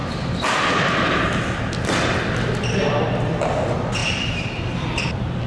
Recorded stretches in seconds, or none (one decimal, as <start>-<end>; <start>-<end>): 2.9-4.0